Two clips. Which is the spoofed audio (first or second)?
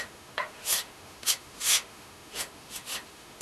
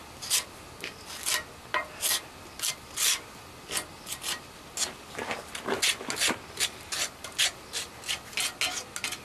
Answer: first